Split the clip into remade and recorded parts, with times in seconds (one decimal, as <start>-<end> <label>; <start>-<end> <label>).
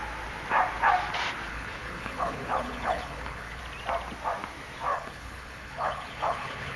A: 0.0-1.5 recorded; 1.5-3.6 remade; 3.6-4.9 recorded; 4.9-6.8 remade